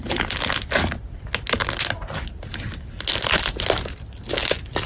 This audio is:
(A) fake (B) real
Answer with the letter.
B